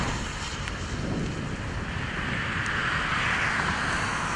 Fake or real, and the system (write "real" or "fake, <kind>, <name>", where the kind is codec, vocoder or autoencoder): real